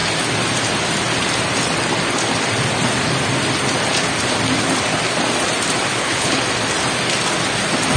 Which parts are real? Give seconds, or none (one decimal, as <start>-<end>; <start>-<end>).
0.0-5.9; 6.4-8.0